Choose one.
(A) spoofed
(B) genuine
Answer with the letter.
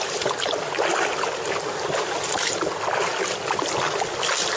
B